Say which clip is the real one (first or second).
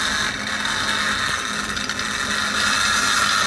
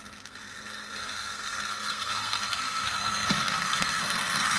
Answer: first